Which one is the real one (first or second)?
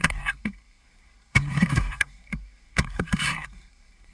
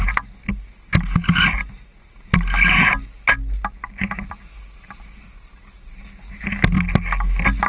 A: second